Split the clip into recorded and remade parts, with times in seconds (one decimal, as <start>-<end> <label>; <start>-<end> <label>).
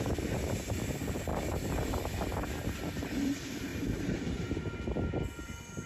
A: 0.0-1.3 recorded; 1.3-1.9 remade; 1.9-3.7 recorded; 3.7-4.6 remade; 4.6-5.9 recorded